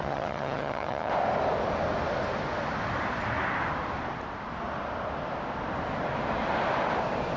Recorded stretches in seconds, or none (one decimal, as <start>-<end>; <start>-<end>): 1.1-7.4